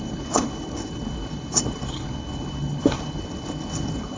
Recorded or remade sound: remade